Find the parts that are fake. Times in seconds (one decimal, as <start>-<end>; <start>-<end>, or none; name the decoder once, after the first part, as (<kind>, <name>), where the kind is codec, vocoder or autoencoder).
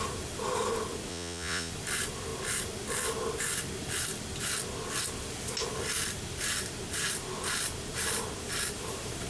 1.1-1.7 (vocoder, Vocos)